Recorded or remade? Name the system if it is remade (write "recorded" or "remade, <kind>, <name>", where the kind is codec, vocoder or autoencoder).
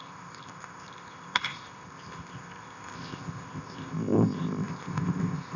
remade, codec, ZipCodec